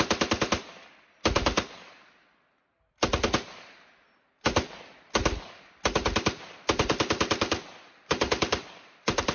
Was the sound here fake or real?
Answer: real